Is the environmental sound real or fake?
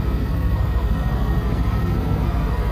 fake